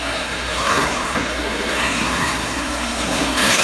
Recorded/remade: remade